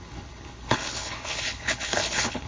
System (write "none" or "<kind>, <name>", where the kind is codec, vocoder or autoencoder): codec, HILCodec